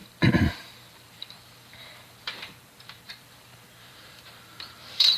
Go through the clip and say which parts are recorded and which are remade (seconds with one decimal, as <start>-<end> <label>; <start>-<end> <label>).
0.0-5.2 remade